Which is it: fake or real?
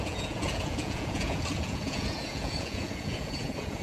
fake